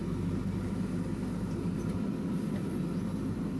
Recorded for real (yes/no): yes